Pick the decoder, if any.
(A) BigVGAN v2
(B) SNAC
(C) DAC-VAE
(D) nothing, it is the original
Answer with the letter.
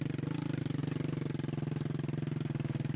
D